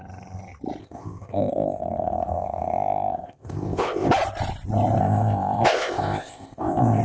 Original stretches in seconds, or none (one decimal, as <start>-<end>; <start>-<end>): 0.0-0.8; 4.1-5.0